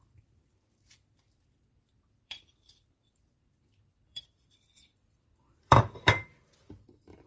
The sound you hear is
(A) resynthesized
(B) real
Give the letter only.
A